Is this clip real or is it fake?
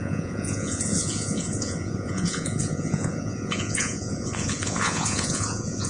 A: fake